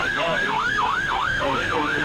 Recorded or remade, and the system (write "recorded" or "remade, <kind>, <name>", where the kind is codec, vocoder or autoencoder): remade, codec, SNAC